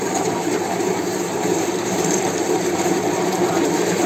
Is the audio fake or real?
fake